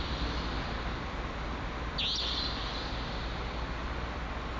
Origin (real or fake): real